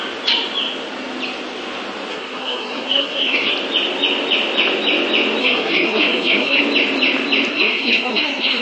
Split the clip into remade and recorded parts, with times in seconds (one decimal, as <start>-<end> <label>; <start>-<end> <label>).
0.0-2.1 recorded; 2.1-3.5 remade; 3.5-5.4 recorded; 5.4-6.6 remade; 6.6-7.5 recorded; 7.5-8.6 remade